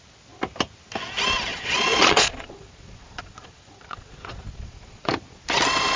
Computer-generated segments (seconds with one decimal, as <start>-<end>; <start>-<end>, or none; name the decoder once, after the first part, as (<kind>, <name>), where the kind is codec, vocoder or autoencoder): 1.5-5.1 (vocoder, Vocos)